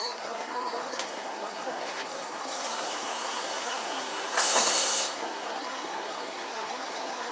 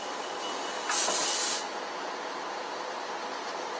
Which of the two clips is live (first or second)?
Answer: second